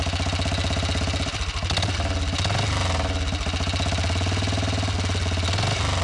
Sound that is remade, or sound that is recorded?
recorded